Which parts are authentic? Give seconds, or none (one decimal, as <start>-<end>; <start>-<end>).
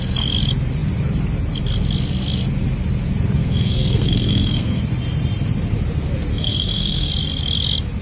0.0-3.4; 4.8-6.3; 7.1-8.0